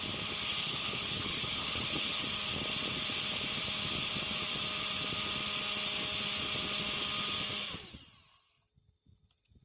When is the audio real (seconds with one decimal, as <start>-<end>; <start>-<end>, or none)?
0.0-0.5; 2.2-9.6